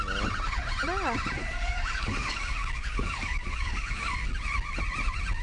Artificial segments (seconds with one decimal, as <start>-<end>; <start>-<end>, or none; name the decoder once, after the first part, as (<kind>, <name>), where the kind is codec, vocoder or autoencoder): 1.4-4.3 (codec, DAC)